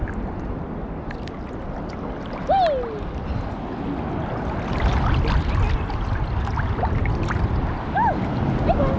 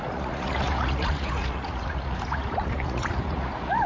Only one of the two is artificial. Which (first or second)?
second